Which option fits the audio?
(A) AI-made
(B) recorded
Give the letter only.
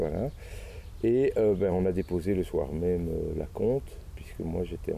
A